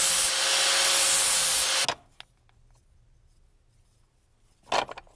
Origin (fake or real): real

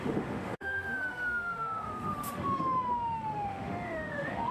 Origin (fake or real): fake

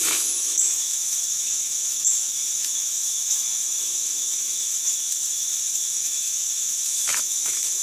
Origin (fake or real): fake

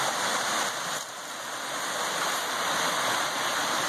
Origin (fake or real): real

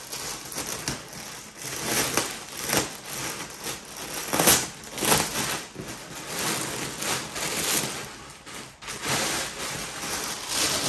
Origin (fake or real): real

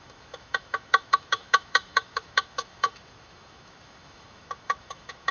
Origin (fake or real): fake